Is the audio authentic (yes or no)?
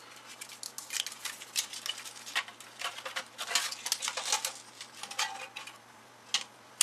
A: yes